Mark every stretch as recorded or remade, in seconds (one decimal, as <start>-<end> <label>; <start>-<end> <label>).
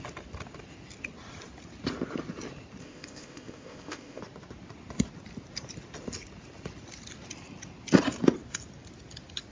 0.0-2.8 recorded; 2.8-4.2 remade; 4.2-9.5 recorded